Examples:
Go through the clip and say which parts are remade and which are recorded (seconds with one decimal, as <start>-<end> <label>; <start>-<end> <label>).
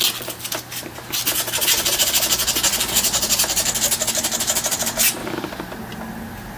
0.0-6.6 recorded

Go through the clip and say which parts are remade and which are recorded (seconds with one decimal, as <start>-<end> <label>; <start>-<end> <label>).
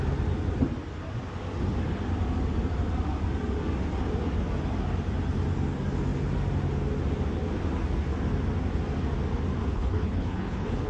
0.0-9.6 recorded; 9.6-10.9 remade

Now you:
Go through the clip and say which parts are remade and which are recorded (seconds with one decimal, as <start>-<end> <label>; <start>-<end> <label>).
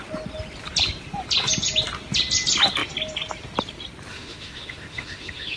0.0-4.1 recorded; 4.1-5.6 remade